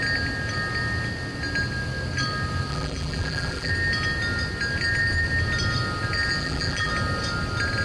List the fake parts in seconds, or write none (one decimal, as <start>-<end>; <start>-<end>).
2.7-3.7; 6.4-6.9